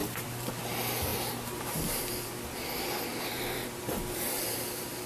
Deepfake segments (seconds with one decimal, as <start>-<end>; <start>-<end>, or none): 0.0-0.5; 1.1-1.8; 3.1-4.5